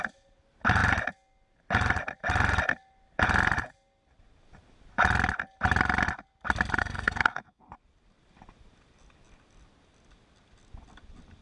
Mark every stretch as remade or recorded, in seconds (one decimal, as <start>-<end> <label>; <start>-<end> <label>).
0.0-6.8 recorded; 6.8-7.6 remade; 7.6-11.4 recorded